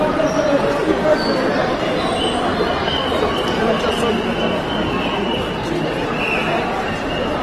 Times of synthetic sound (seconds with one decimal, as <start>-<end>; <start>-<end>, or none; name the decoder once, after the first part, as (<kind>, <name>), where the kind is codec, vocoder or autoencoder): 0.8-2.1 (vocoder, BigVGAN v2)